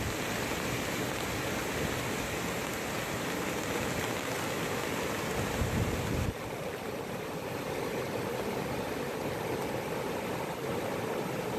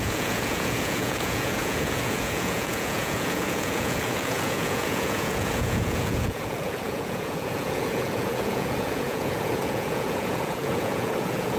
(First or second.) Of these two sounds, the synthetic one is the second